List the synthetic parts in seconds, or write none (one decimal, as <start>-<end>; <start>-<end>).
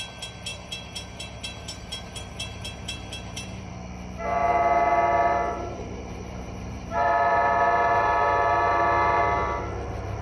0.5-3.7; 4.4-9.2